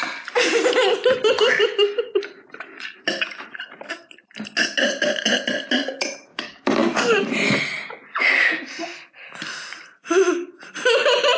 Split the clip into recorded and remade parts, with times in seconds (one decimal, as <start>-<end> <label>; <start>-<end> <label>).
0.0-6.3 recorded; 6.3-7.0 remade; 7.0-11.4 recorded